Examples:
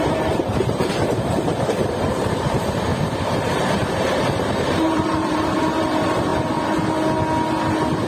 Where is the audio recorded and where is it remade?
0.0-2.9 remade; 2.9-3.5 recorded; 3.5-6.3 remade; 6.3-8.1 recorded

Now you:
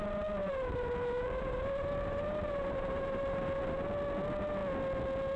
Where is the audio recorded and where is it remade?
0.0-0.4 recorded; 0.4-3.5 remade; 3.5-5.4 recorded

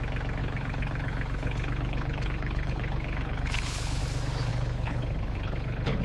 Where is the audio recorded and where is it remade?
0.0-0.4 recorded; 0.4-4.0 remade; 4.0-4.5 recorded; 4.5-6.0 remade

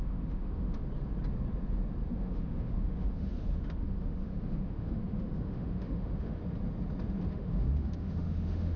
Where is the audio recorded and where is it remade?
0.0-0.8 remade; 0.8-2.1 recorded; 2.1-6.4 remade; 6.4-7.3 recorded; 7.3-8.8 remade